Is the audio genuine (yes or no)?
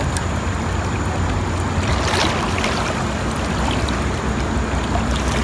yes